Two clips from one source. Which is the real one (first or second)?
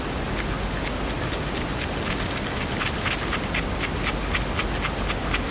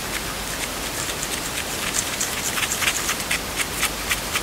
first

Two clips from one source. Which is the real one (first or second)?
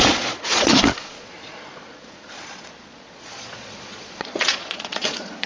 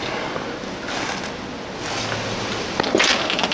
second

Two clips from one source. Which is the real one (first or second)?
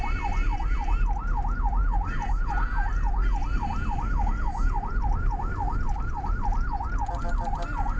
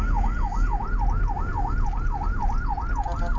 second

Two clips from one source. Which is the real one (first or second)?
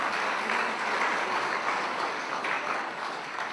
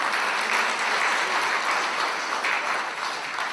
second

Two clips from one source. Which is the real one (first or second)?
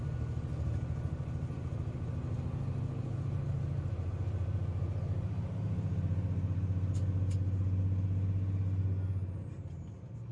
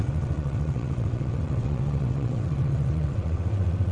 first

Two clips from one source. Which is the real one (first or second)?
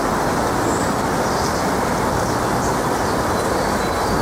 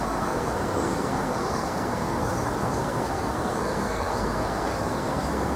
first